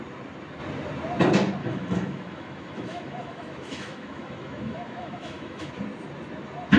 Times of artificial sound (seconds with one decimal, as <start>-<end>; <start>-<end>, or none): 1.6-5.7